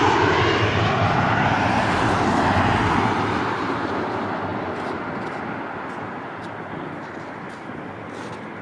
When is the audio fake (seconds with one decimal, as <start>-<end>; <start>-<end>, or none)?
4.5-5.4